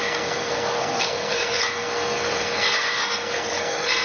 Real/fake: fake